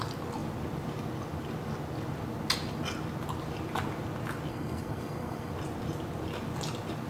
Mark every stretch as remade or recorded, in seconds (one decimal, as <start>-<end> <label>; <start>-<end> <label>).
0.0-4.5 recorded; 4.5-5.5 remade; 5.5-7.1 recorded